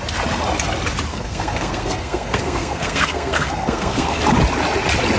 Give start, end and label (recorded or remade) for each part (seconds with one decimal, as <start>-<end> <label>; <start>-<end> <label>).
0.0-1.1 recorded; 1.1-4.2 remade; 4.2-5.2 recorded